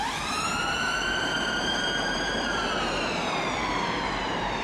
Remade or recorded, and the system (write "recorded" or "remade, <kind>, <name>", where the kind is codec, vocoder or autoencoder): remade, vocoder, BigVGAN v2